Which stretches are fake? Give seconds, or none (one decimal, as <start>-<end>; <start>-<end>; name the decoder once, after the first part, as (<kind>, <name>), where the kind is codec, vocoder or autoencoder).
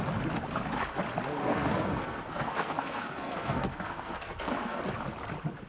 1.4-4.8 (codec, SNAC)